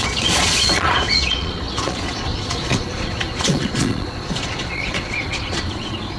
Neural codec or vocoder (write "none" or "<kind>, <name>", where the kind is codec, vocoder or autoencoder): vocoder, Vocos